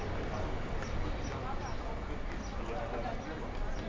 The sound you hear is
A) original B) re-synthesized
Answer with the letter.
A